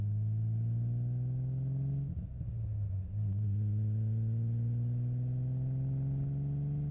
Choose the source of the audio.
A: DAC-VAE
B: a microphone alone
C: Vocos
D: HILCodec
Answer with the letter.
B